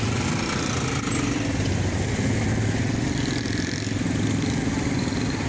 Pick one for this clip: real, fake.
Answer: real